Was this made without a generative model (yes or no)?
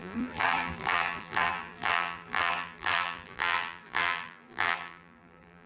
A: no